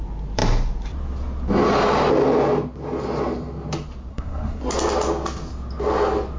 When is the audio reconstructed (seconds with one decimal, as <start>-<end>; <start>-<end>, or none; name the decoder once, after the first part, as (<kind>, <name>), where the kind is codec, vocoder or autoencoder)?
4.1-4.7 (codec, SNAC)